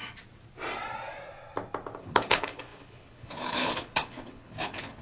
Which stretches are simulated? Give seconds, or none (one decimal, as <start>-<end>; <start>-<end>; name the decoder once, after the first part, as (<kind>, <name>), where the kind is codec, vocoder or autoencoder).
2.0-5.0 (codec, HILCodec)